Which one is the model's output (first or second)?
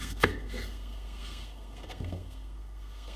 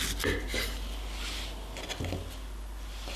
first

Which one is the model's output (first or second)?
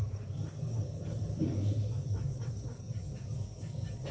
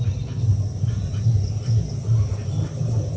first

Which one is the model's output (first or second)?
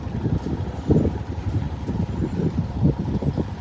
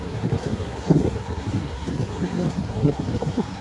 second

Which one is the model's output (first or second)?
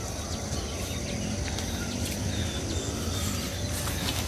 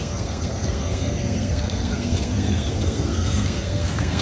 second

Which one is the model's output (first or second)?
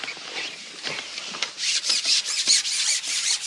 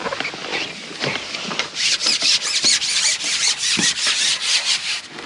first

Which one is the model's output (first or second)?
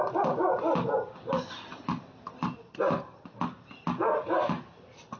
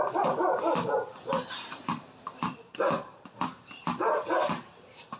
second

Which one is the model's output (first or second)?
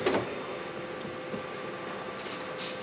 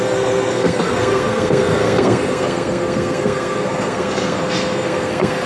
second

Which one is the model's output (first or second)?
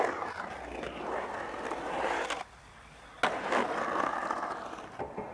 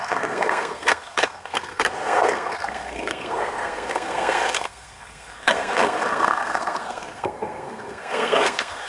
second